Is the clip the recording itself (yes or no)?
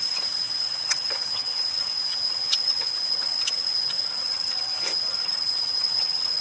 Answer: no